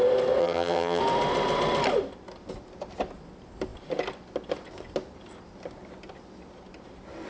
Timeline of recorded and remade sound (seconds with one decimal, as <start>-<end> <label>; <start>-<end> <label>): 0.0-0.4 recorded; 0.4-1.0 remade; 1.0-7.3 recorded